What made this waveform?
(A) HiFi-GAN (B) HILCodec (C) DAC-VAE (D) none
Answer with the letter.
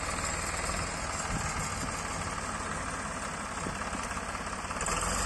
D